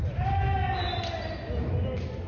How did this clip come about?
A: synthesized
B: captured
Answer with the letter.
B